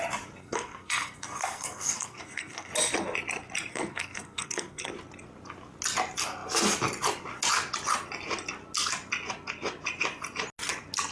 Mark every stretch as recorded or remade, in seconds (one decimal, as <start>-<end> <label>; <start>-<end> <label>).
0.0-0.4 recorded; 0.4-2.7 remade; 2.7-3.7 recorded; 3.7-4.9 remade; 4.9-11.1 recorded